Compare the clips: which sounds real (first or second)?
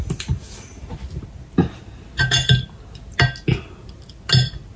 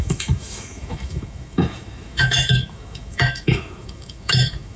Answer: first